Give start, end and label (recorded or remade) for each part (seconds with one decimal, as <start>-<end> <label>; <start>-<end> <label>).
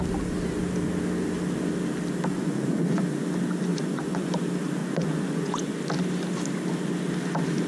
0.0-2.3 recorded; 2.3-3.0 remade; 3.0-3.7 recorded; 3.7-4.3 remade; 4.3-4.8 recorded; 4.8-5.8 remade; 5.8-7.7 recorded